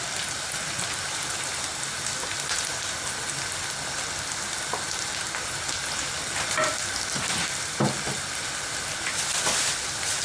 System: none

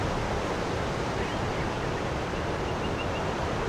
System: none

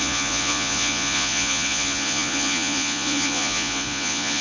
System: vocoder, Vocos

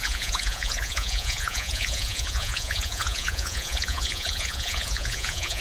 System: vocoder, Vocos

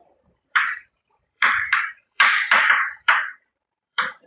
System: vocoder, BigVGAN v2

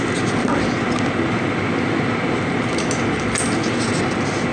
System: none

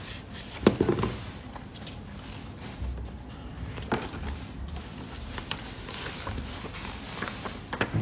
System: none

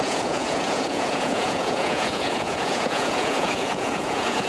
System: vocoder, Vocos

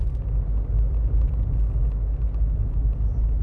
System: none